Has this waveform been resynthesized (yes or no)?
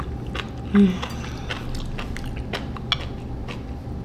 no